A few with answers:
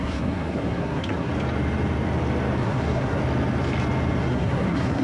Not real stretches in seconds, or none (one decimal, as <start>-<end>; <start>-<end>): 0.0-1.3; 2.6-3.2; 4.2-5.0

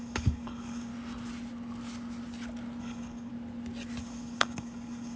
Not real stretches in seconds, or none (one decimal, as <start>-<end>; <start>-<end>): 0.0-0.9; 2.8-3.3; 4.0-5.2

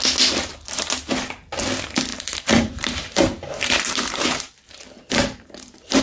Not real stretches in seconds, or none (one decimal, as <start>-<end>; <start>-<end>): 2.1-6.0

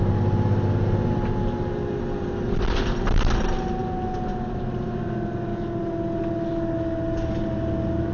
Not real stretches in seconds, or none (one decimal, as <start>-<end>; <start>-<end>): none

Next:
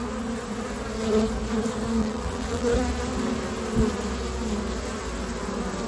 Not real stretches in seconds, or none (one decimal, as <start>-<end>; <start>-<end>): 2.0-2.7